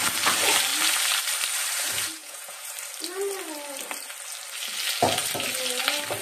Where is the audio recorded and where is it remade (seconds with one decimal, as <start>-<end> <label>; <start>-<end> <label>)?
0.0-2.2 recorded; 2.2-2.7 remade; 2.7-6.2 recorded